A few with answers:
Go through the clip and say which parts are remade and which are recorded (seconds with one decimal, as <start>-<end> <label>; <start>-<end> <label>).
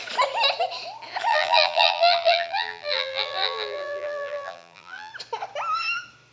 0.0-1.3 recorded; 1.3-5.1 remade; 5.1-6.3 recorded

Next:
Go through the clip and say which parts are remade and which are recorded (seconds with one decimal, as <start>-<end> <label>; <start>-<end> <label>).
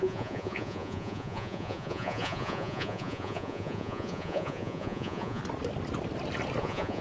0.0-5.4 remade; 5.4-6.6 recorded; 6.6-7.0 remade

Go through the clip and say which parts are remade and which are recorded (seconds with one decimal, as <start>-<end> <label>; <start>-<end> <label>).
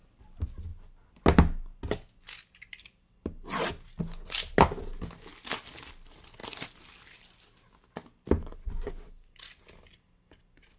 0.0-6.4 recorded; 6.4-10.8 remade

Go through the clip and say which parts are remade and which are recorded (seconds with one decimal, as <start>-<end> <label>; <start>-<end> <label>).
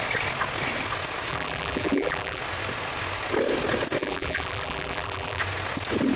0.0-1.3 recorded; 1.3-2.4 remade; 2.4-4.0 recorded; 4.0-5.4 remade; 5.4-6.2 recorded